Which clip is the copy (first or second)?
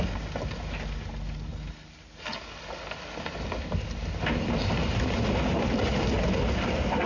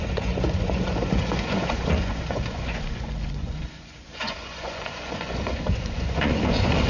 second